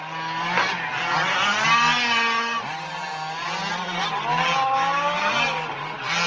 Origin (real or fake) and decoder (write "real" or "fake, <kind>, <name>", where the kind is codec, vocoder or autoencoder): real